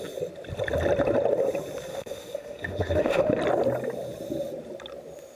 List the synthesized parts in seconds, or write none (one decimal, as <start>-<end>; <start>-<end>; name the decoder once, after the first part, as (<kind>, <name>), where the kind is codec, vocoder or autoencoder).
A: 1.9-3.4 (autoencoder, DAC-VAE)